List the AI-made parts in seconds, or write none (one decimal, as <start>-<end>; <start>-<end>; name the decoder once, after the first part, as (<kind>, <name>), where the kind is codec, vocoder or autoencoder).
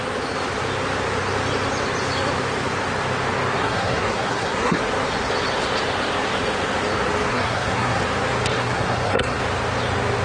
3.6-4.8 (codec, SNAC); 7.3-8.0; 8.5-9.4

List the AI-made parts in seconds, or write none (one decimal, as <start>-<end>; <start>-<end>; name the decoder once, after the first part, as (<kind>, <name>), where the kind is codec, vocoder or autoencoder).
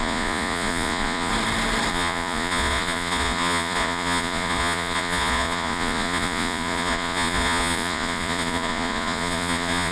0.0-1.3 (vocoder, Vocos); 1.9-9.9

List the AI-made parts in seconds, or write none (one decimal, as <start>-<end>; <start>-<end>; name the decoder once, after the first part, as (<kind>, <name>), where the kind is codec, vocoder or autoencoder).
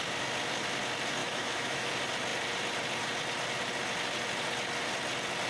1.2-1.9 (autoencoder, DAC-VAE)